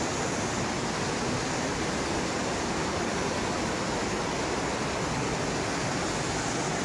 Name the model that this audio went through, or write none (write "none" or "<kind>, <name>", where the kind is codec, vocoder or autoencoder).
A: none